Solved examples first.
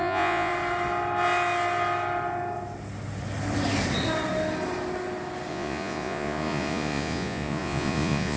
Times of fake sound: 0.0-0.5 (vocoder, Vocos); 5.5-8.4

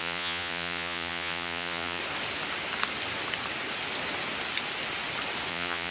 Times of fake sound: 0.0-2.0 (vocoder, Vocos); 5.5-5.9

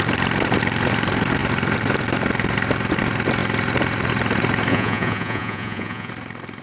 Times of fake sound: 4.7-6.1 (vocoder, Vocos)

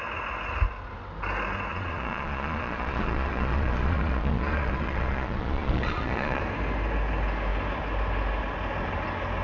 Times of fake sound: 1.7-6.4 (vocoder, Vocos)